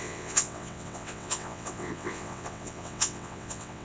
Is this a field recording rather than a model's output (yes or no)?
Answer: no